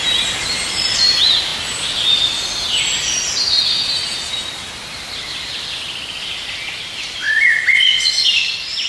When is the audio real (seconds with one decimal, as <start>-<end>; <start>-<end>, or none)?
0.0-8.9